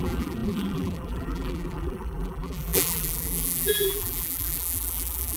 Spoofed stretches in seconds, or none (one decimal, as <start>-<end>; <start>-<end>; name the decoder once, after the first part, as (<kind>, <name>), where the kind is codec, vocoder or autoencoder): 0.0-5.4 (vocoder, BigVGAN v2)